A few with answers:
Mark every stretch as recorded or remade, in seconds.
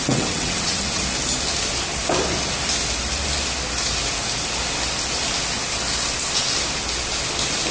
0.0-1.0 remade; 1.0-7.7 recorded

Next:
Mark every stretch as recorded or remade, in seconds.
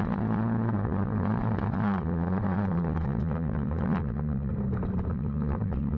0.0-4.5 remade; 4.5-5.1 recorded; 5.1-6.0 remade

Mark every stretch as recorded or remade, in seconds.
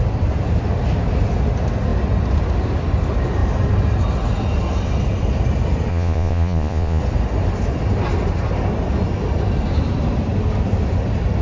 0.0-5.9 recorded; 5.9-7.0 remade; 7.0-11.4 recorded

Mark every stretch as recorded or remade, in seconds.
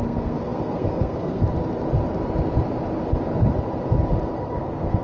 0.0-1.4 remade; 1.4-4.4 recorded; 4.4-5.0 remade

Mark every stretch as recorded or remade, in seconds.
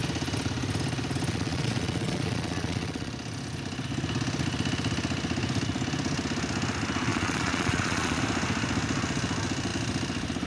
0.0-1.3 recorded; 1.3-3.1 remade; 3.1-7.1 recorded; 7.1-8.2 remade; 8.2-10.5 recorded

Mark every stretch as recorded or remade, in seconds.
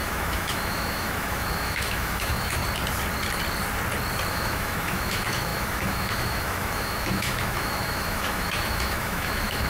0.0-2.6 remade; 2.6-4.3 recorded; 4.3-9.7 remade